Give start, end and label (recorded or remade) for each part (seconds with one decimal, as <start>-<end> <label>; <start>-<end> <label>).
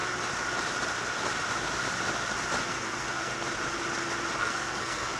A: 0.0-2.7 recorded; 2.7-3.3 remade; 3.3-4.4 recorded; 4.4-5.2 remade